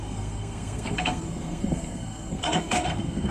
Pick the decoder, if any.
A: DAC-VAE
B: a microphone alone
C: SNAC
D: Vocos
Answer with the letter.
C